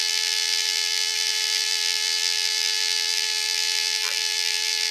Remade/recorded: remade